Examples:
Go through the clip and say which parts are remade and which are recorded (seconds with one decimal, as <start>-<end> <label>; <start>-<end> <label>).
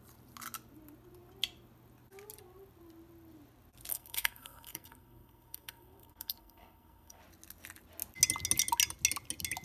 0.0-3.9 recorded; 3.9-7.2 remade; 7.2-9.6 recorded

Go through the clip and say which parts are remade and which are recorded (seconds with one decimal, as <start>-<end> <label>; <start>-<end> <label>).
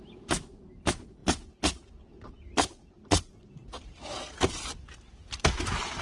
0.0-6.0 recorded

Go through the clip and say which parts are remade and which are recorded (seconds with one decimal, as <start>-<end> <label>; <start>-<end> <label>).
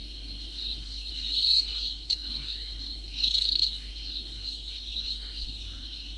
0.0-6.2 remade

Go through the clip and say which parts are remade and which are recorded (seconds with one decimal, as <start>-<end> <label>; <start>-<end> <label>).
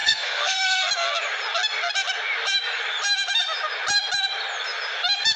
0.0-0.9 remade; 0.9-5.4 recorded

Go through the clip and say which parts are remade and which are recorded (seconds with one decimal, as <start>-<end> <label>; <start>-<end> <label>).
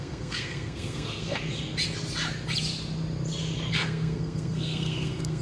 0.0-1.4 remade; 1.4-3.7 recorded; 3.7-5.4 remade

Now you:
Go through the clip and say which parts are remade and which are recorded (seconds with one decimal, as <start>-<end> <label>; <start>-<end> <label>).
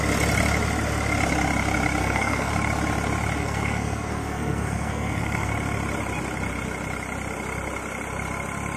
0.0-2.0 recorded; 2.0-2.5 remade; 2.5-3.4 recorded; 3.4-5.5 remade; 5.5-8.8 recorded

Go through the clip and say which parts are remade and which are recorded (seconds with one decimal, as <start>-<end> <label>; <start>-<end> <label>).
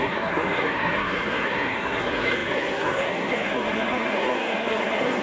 0.0-5.2 remade